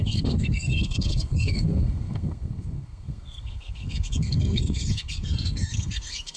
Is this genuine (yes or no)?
no